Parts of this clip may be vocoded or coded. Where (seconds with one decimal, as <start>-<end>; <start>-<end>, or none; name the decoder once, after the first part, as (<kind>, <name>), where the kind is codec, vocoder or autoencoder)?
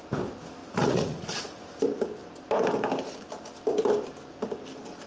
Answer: 0.6-1.6 (vocoder, Vocos)